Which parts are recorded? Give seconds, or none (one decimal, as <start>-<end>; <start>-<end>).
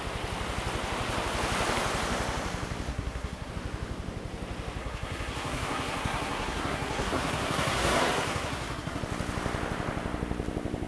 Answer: 0.0-2.9; 3.5-4.8; 9.0-10.9